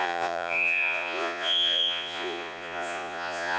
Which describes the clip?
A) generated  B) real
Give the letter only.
A